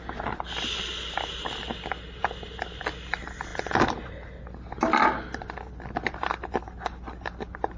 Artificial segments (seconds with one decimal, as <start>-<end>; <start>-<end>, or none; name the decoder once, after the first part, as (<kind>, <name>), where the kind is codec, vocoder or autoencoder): none